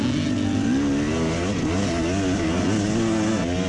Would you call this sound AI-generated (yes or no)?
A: no